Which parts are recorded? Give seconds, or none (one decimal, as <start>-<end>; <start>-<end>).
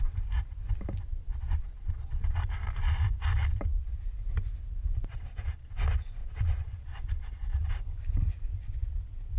0.0-1.2; 2.4-5.1; 5.7-6.2; 7.7-9.4